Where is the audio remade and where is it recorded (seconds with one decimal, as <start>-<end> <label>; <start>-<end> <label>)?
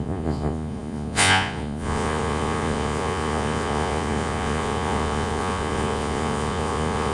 0.0-7.1 remade